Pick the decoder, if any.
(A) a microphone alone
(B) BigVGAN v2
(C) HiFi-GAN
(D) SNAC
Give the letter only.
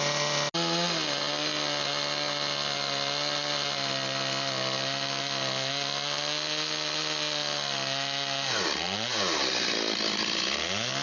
A